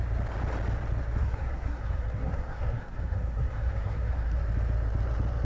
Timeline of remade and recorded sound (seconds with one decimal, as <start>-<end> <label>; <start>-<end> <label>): 0.0-1.2 recorded; 1.2-4.4 remade; 4.4-5.4 recorded